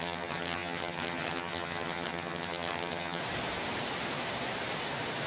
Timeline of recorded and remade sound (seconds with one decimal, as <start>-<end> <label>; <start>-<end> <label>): 0.0-3.2 remade; 3.2-5.3 recorded